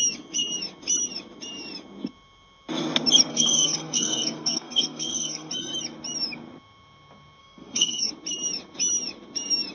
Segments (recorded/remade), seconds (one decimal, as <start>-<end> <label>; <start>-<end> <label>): 0.0-3.3 recorded; 3.3-5.5 remade; 5.5-7.4 recorded; 7.4-8.1 remade; 8.1-9.7 recorded